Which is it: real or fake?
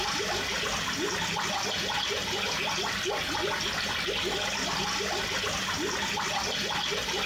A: real